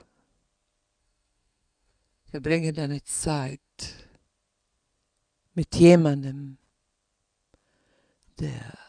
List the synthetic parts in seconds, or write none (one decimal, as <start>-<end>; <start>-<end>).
1.0-3.7